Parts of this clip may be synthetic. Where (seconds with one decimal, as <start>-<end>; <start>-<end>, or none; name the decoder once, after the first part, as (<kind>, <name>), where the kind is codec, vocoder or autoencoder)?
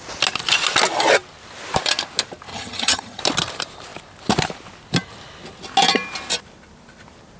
2.5-3.2 (vocoder, HiFi-GAN)